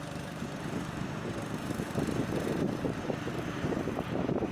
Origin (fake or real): fake